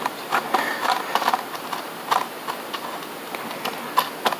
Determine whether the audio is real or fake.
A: real